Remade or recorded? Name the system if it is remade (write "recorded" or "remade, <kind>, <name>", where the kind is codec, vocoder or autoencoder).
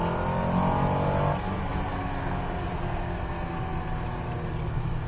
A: recorded